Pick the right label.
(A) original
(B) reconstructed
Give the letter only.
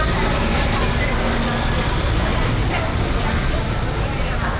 A